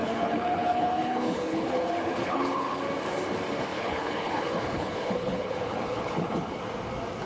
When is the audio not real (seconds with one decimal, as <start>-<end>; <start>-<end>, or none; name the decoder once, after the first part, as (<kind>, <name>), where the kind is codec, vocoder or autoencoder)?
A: 0.0-2.8 (codec, HILCodec); 3.7-6.6